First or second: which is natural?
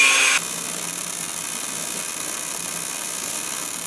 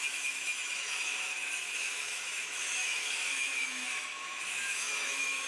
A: first